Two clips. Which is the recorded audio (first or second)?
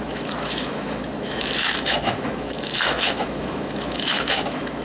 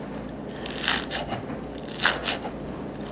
second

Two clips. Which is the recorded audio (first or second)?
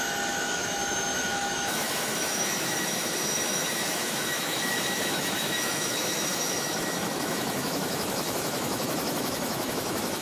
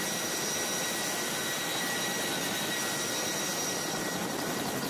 second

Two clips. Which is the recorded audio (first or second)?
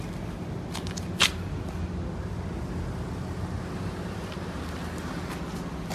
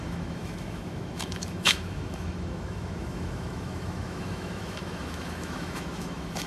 first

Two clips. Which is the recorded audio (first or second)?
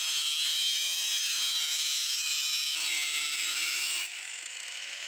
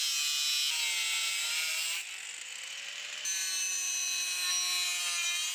second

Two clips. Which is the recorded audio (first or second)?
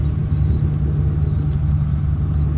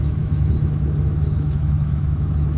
first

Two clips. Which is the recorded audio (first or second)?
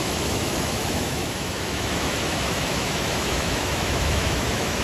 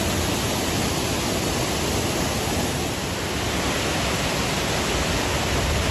second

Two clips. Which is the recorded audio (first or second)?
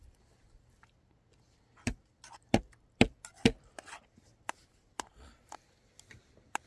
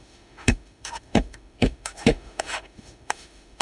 first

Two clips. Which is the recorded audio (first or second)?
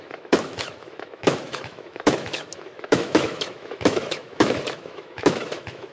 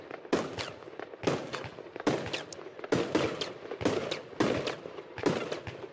second